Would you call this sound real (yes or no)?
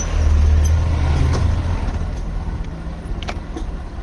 yes